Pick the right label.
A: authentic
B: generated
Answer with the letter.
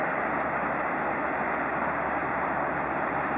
A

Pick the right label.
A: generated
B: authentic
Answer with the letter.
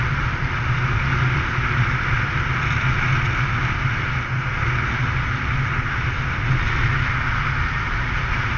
B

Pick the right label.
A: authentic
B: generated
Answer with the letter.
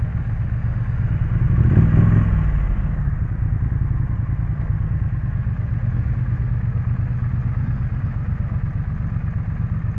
A